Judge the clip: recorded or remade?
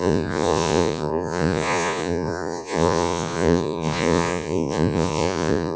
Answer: remade